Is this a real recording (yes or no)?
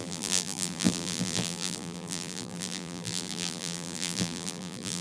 no